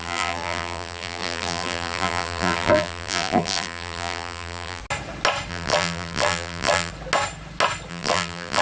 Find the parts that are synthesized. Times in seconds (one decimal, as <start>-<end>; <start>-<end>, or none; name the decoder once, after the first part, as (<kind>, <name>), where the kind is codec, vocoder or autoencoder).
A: 0.0-4.8 (vocoder, BigVGAN v2); 5.5-6.9; 7.9-8.6